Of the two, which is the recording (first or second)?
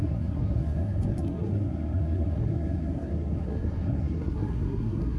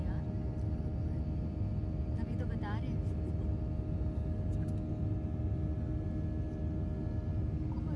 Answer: second